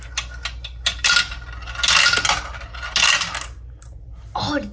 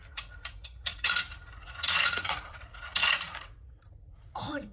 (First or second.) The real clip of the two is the first